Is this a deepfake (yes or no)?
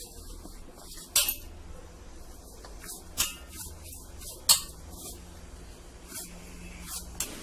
no